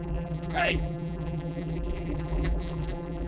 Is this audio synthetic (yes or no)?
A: yes